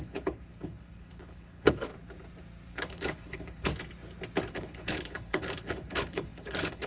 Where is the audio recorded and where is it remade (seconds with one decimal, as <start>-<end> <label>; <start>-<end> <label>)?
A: 0.0-1.9 remade; 1.9-2.7 recorded; 2.7-3.7 remade; 3.7-4.5 recorded; 4.5-6.9 remade